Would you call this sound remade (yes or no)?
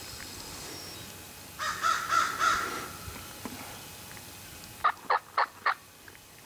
no